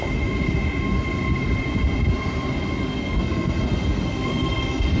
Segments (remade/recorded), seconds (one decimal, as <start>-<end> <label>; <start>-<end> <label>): 0.0-2.9 recorded; 2.9-5.0 remade